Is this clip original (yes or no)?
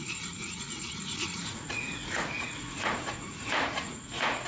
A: no